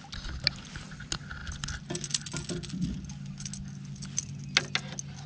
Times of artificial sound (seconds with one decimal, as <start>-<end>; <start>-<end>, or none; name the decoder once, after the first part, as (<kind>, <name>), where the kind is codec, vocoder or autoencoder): none